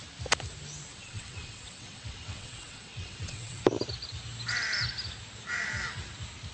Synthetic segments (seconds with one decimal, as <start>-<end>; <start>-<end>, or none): 0.9-3.6